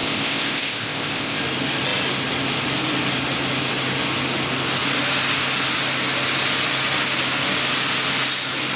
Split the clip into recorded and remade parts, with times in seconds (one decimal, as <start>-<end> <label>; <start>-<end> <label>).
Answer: 0.0-1.4 remade; 1.4-8.8 recorded